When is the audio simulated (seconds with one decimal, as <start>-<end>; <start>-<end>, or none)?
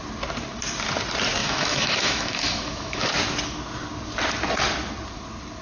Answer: 1.4-3.1